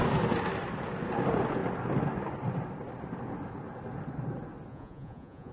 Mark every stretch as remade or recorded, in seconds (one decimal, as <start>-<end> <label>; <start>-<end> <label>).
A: 0.0-4.7 recorded; 4.7-5.5 remade